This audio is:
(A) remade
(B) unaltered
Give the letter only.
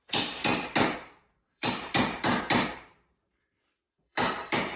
A